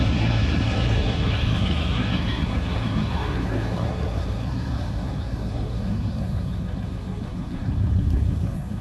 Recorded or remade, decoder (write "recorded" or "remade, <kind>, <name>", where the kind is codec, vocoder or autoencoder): remade, codec, SNAC